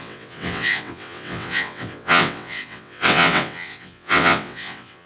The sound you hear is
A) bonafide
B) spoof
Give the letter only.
B